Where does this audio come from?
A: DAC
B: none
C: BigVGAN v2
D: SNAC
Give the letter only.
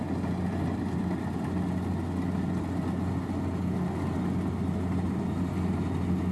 B